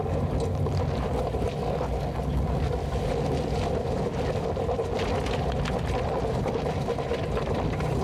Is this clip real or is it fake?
real